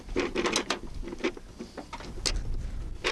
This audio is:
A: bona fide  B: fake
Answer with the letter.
A